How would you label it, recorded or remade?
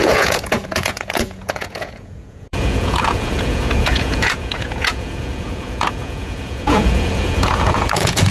remade